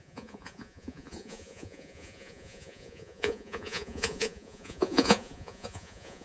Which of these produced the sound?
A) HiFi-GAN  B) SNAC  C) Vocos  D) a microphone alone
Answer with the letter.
C